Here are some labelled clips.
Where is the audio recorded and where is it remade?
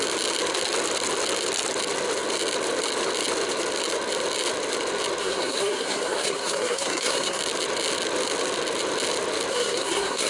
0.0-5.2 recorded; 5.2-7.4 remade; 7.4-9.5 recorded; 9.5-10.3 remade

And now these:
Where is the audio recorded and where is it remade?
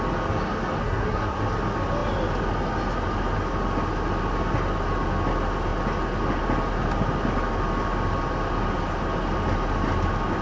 0.0-0.8 recorded; 0.8-1.4 remade; 1.4-10.4 recorded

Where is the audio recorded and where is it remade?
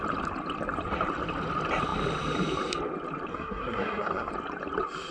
0.0-3.3 recorded; 3.3-4.3 remade; 4.3-5.1 recorded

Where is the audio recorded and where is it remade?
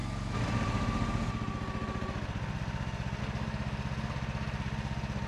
0.0-5.3 recorded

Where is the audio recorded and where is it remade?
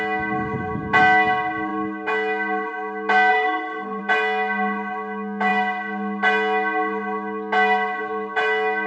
0.0-3.3 recorded; 3.3-4.0 remade; 4.0-8.9 recorded